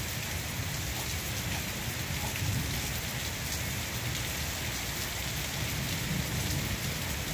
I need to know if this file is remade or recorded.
recorded